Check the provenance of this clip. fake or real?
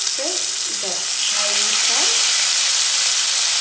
real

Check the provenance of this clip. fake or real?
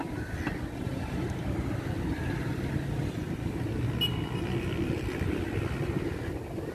real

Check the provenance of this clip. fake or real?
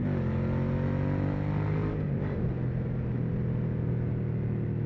real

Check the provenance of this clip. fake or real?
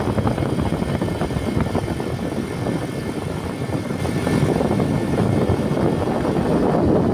real